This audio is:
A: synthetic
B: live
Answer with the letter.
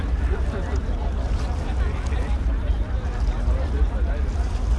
B